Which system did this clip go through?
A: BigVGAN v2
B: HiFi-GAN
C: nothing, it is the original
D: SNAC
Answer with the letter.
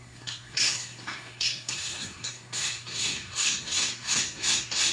D